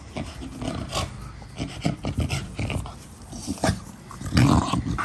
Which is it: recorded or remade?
recorded